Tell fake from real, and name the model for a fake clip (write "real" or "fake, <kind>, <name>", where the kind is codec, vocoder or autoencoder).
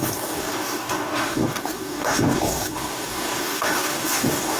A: fake, codec, DAC